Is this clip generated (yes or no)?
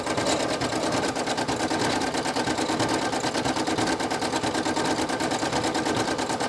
no